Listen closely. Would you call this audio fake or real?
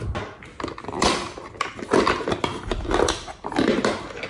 real